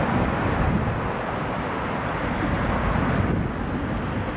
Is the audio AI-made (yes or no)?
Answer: no